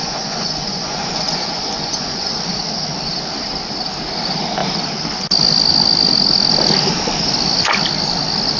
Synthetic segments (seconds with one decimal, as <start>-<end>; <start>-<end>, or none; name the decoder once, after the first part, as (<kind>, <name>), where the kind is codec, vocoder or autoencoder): 0.0-2.3 (vocoder, Vocos)